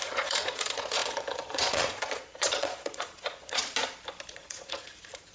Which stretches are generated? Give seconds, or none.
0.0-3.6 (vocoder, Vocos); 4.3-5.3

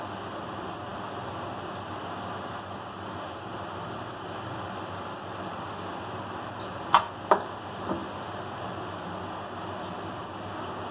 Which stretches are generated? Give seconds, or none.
none

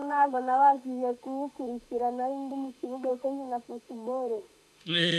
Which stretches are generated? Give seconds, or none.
0.0-5.2 (autoencoder, DAC-VAE)

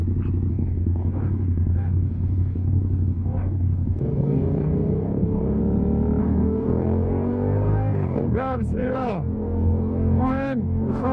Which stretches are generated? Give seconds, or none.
0.5-5.6 (codec, DAC); 6.2-11.1

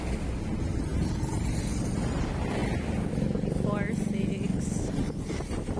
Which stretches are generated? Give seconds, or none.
none

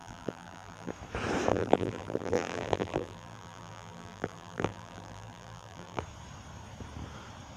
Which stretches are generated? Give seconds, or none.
0.0-0.9 (vocoder, BigVGAN v2); 1.5-6.0

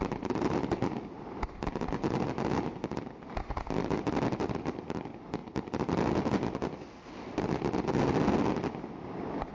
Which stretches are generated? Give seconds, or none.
none

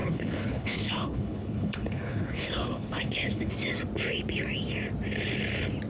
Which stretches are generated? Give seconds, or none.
0.0-3.5 (codec, HILCodec)